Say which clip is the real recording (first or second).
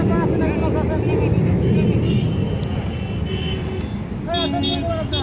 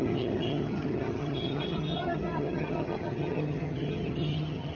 first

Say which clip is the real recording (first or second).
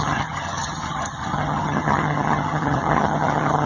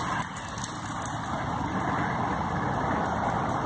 second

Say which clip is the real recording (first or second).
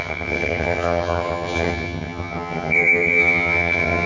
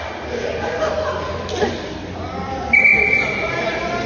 second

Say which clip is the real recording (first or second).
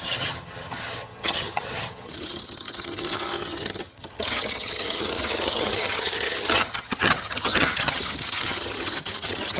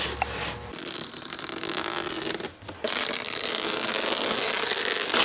second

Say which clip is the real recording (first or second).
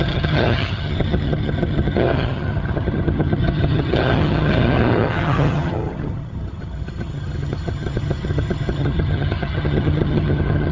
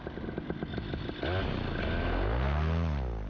second